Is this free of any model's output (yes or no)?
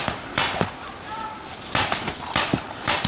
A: no